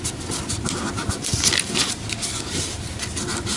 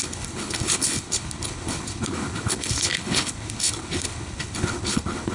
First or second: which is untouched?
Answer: first